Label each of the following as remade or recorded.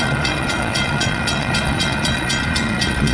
remade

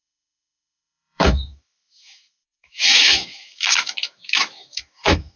remade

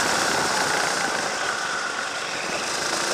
recorded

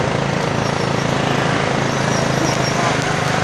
recorded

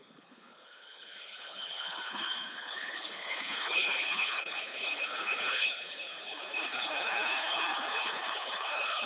remade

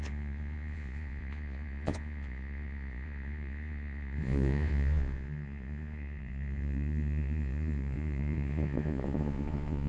remade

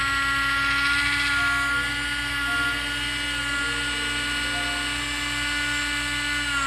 recorded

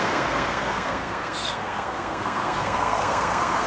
remade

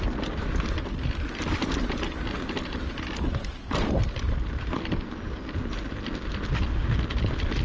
recorded